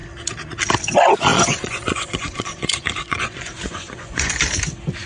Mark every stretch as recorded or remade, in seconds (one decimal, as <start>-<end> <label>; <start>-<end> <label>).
0.0-1.3 recorded; 1.3-4.4 remade; 4.4-5.1 recorded